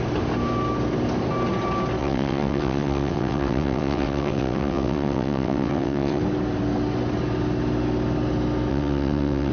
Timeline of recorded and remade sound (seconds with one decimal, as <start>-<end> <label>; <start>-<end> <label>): 0.0-2.0 recorded; 2.0-6.2 remade; 6.2-8.7 recorded; 8.7-9.5 remade